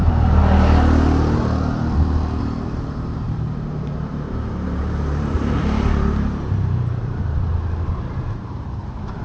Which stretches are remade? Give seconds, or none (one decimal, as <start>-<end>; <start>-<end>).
0.0-0.4; 2.4-7.5; 8.4-9.2